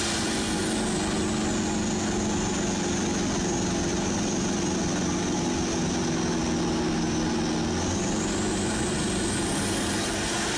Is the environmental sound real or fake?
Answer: real